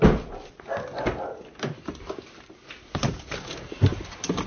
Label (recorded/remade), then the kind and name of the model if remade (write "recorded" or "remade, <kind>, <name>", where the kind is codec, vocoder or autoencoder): recorded